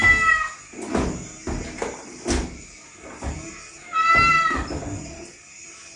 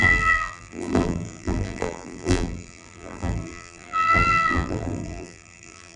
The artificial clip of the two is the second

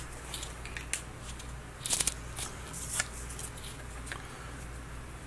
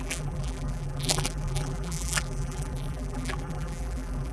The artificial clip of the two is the second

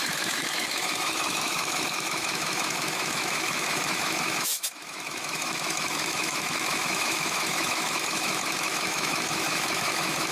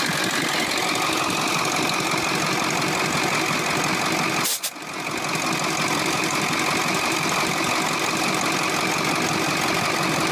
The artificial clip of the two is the first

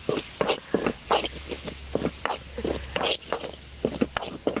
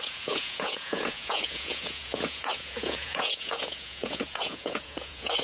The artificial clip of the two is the second